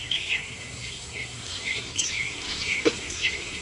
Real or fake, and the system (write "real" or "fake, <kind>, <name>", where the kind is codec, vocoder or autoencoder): fake, codec, SNAC